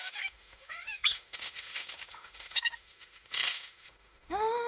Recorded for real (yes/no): no